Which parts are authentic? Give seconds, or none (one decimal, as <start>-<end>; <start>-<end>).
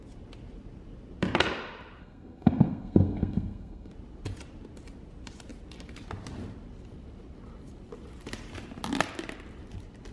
0.0-2.0; 3.9-10.1